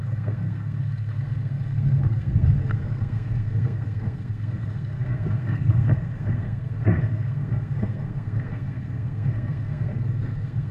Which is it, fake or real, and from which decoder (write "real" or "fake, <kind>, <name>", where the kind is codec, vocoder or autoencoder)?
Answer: fake, codec, SNAC